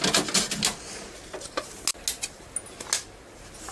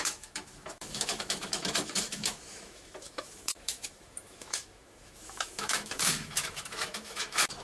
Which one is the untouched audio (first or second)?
first